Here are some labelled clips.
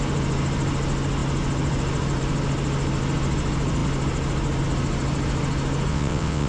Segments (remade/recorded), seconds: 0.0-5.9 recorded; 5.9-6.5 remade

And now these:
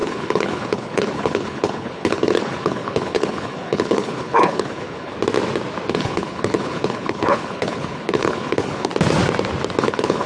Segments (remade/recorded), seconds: 0.0-5.1 remade; 5.1-5.9 recorded; 5.9-8.9 remade; 8.9-9.8 recorded; 9.8-10.3 remade